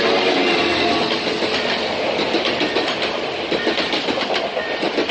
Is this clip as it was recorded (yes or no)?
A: yes